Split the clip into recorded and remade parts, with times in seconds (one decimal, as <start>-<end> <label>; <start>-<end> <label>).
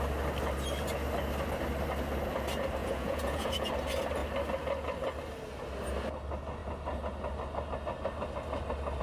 0.0-2.8 recorded; 2.8-3.7 remade; 3.7-9.0 recorded